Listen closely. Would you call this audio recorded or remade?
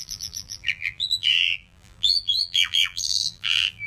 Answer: remade